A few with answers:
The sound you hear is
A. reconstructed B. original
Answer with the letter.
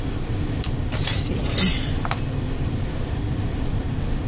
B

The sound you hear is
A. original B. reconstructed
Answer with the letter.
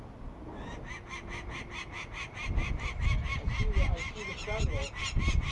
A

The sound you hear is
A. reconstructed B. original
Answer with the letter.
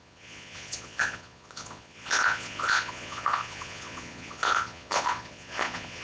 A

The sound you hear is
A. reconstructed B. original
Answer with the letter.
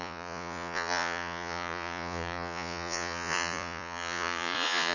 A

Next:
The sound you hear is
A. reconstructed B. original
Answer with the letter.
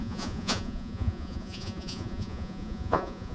A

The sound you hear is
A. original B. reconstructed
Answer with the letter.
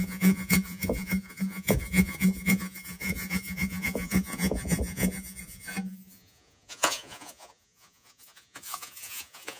B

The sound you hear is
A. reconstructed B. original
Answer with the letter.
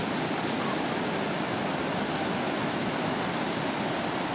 B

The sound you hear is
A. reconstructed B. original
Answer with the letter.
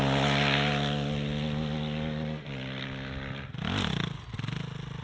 B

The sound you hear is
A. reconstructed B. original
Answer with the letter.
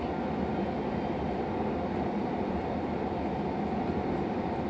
B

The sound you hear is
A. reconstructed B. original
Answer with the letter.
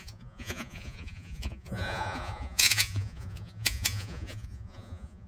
A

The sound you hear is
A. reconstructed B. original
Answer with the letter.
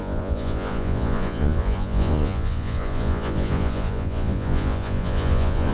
A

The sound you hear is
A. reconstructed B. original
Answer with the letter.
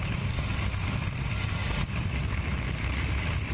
B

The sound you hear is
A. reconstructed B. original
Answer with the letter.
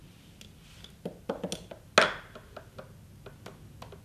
B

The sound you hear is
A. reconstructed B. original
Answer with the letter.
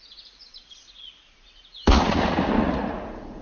A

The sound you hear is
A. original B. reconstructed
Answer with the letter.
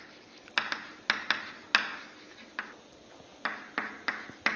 A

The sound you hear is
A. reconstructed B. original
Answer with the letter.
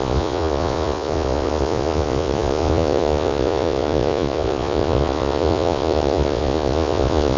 A